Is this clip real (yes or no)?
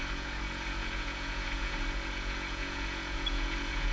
no